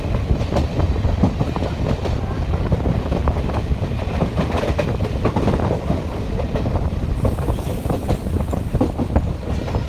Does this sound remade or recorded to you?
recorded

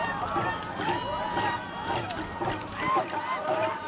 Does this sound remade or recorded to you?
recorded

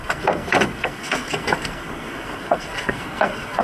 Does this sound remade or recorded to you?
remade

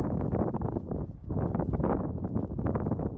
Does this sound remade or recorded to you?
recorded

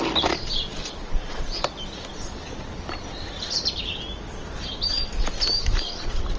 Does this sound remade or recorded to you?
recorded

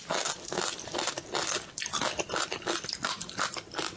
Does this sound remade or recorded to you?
recorded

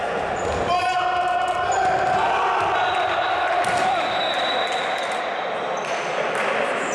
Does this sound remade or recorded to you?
recorded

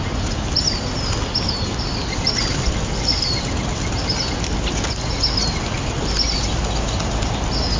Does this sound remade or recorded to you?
recorded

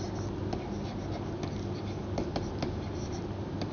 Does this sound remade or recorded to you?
recorded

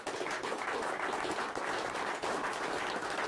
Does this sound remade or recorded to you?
recorded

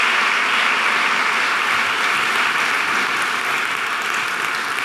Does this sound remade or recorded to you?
recorded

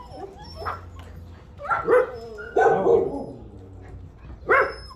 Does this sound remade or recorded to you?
recorded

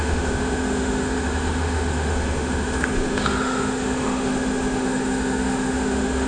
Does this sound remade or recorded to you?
remade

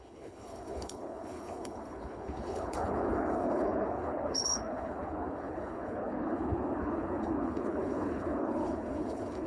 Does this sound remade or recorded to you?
remade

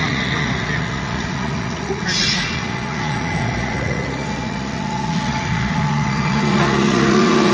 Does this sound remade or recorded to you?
remade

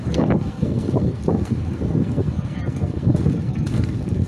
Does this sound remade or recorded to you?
remade